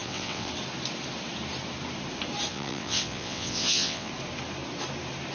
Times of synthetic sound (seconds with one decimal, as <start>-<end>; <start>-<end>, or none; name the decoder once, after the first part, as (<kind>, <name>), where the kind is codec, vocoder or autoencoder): 0.0-0.5 (vocoder, WaveNeXt); 2.5-4.1